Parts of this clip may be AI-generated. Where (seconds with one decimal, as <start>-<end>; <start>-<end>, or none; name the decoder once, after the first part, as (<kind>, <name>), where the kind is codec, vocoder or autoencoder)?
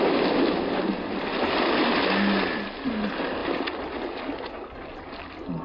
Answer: none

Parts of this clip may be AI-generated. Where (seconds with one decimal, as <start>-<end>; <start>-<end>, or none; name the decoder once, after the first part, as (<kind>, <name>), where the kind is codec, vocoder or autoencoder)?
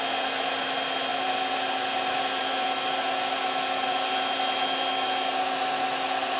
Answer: none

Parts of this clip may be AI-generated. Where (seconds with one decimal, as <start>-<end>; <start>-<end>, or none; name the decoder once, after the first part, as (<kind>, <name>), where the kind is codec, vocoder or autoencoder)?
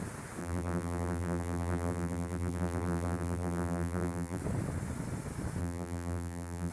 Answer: 0.4-4.4 (vocoder, BigVGAN v2); 5.6-6.7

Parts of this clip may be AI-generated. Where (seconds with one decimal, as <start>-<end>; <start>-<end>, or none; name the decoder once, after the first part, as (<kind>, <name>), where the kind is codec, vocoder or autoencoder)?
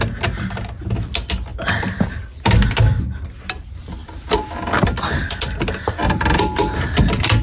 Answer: 1.5-2.2 (vocoder, BigVGAN v2)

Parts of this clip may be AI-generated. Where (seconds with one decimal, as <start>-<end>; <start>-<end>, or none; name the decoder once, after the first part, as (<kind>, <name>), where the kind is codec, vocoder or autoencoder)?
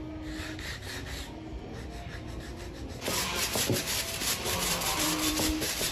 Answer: 2.5-5.9 (vocoder, BigVGAN v2)